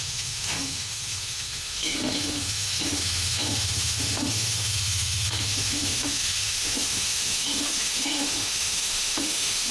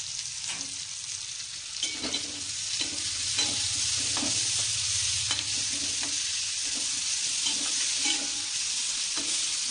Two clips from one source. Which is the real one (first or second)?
second